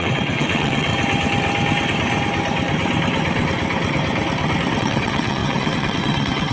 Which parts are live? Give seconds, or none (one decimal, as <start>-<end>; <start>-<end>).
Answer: 0.9-4.8